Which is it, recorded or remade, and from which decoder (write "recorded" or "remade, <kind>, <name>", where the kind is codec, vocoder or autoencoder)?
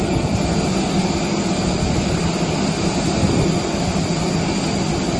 recorded